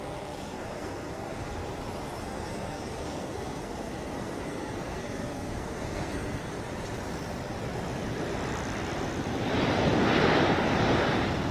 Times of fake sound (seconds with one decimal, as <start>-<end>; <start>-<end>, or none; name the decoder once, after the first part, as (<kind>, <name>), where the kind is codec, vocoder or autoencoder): 0.0-1.6 (codec, SNAC); 2.2-6.5